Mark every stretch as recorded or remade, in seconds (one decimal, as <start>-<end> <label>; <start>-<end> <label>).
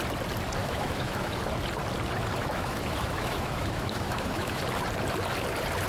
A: 0.0-0.6 recorded; 0.6-1.4 remade; 1.4-2.4 recorded; 2.4-4.6 remade; 4.6-5.9 recorded